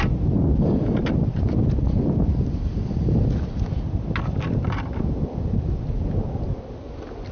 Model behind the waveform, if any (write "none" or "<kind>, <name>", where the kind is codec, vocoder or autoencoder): none